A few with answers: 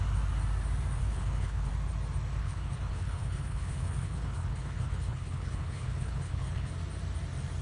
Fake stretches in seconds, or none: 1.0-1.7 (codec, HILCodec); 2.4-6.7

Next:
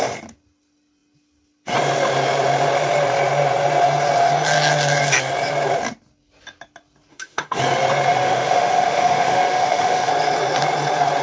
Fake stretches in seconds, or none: 7.1-7.6 (autoencoder, DAC-VAE); 8.1-10.1

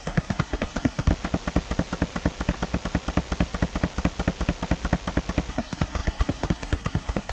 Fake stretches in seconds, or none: 0.0-1.1 (codec, SNAC); 5.5-7.3

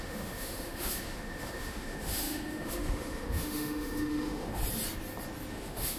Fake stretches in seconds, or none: 0.0-4.6 (autoencoder, DAC-VAE); 5.5-6.0